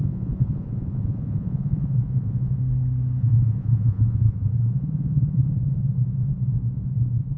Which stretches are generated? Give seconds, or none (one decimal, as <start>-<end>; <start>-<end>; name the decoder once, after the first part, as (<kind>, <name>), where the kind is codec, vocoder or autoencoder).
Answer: 0.0-2.6 (vocoder, Vocos); 3.2-7.4